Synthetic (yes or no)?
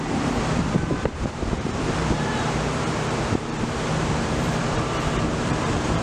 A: yes